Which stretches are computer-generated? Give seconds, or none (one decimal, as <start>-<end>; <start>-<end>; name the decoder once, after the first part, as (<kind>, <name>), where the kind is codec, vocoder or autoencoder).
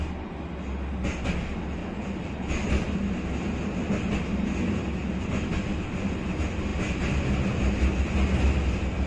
none